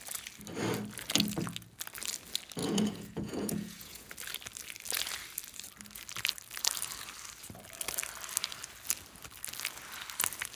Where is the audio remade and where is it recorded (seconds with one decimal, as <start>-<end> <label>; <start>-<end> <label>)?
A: 0.0-2.6 recorded; 2.6-4.1 remade; 4.1-10.6 recorded